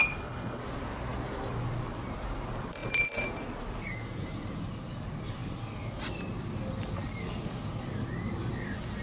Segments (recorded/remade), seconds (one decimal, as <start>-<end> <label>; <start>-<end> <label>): 0.0-0.6 remade; 0.6-9.0 recorded